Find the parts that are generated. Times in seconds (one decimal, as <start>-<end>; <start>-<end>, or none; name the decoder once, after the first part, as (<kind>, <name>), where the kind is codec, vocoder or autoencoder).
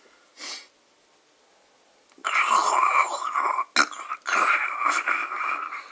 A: none